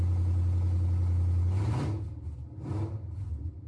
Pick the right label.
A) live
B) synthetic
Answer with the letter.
A